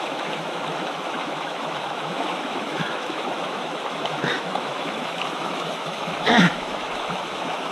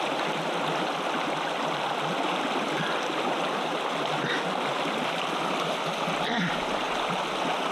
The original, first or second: second